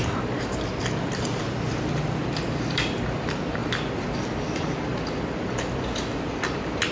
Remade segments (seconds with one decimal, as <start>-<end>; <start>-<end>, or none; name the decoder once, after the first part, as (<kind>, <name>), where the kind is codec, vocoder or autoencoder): 1.0-4.9 (vocoder, BigVGAN v2); 5.5-6.9